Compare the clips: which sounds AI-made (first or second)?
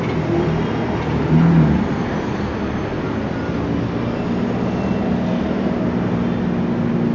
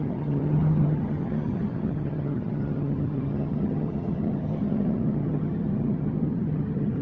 second